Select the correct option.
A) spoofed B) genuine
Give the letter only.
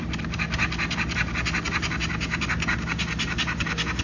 B